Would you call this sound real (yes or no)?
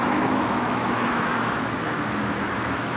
no